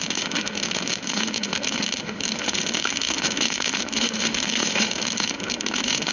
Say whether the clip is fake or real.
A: fake